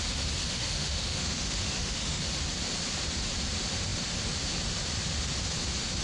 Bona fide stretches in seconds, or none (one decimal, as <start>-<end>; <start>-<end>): 0.0-0.4; 2.2-6.0